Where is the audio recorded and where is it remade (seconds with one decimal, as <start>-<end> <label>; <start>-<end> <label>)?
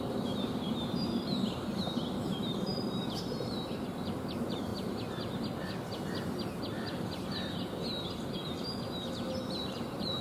0.0-4.7 remade; 4.7-9.6 recorded; 9.6-10.2 remade